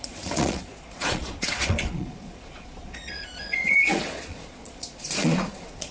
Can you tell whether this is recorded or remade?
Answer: remade